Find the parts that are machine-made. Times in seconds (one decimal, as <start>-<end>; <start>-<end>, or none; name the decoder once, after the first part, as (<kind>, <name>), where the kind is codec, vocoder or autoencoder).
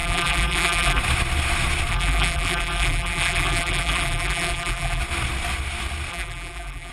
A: 0.0-1.0 (vocoder, BigVGAN v2); 1.9-5.0; 6.1-6.9